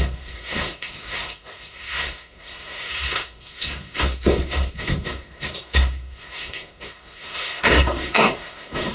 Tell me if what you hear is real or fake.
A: fake